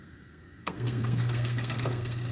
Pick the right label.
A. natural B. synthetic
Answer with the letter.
B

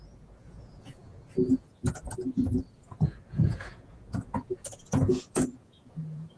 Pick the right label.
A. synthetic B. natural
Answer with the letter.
A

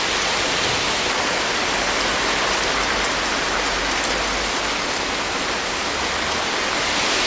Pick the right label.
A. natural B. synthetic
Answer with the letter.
A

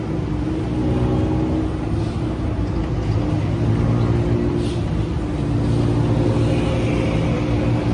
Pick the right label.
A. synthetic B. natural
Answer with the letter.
B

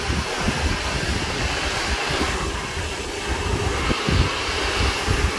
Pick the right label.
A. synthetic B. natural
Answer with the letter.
B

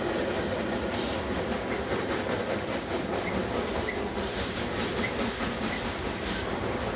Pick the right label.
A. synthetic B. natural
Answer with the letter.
B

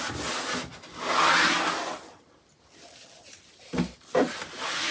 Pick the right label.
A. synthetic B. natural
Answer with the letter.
B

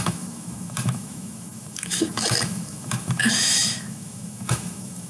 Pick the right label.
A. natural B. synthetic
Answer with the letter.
B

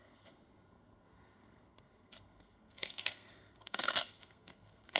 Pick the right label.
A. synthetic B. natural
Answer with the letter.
A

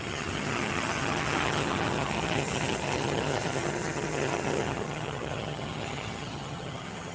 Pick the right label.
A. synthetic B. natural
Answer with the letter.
A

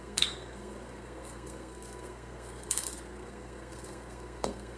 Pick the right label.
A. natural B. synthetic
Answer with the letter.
B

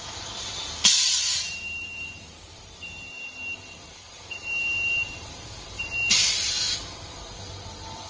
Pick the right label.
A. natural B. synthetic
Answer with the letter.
B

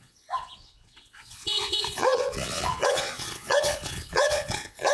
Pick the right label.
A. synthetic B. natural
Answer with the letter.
A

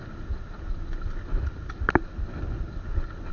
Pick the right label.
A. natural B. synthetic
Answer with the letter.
A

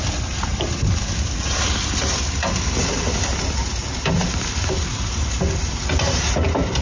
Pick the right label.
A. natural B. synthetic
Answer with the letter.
A